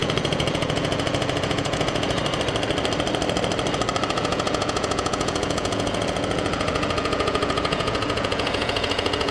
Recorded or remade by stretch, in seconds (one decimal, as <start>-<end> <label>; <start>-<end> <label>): 0.0-2.2 remade; 2.2-4.1 recorded; 4.1-9.3 remade